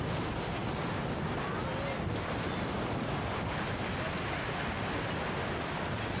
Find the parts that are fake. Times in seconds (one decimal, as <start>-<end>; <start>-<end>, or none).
none